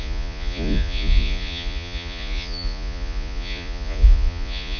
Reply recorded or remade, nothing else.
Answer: remade